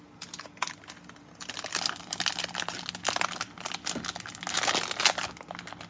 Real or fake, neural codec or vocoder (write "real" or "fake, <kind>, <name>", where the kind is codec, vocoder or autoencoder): real